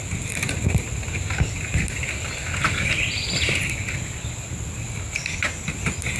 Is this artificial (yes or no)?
no